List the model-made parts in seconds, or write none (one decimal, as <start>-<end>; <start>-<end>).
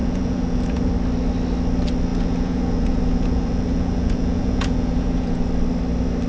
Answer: 0.0-0.9; 2.1-5.4